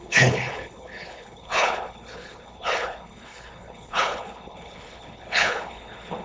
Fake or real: fake